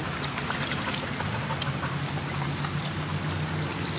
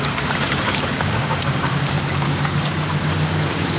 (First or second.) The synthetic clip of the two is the second